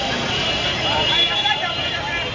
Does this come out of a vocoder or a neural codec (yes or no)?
yes